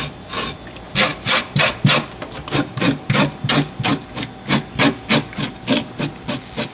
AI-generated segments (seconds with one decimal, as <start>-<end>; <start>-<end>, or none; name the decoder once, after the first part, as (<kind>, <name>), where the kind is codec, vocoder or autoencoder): none